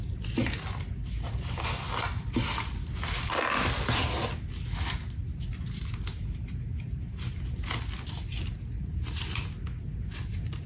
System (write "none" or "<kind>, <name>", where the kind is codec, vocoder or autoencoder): none